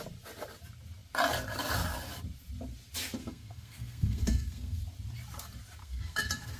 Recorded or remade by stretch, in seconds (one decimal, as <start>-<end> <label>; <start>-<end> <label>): 0.0-3.2 recorded; 3.2-4.8 remade; 4.8-5.8 recorded; 5.8-6.6 remade